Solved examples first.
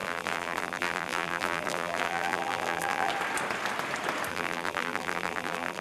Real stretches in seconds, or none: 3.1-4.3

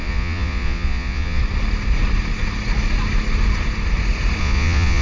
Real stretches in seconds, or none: 1.4-4.4

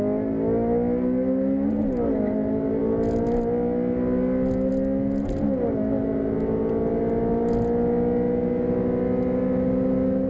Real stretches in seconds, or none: 0.0-10.3

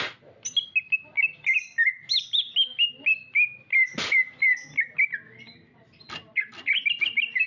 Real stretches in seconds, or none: 0.0-7.5

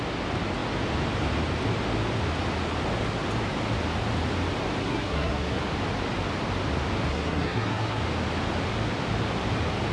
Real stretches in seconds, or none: 0.0-4.8; 5.6-7.1; 8.0-9.9

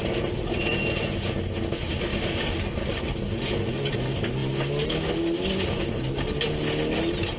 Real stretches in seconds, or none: 0.0-7.4

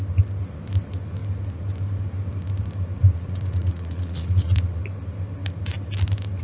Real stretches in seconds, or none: 0.0-3.0; 4.8-6.4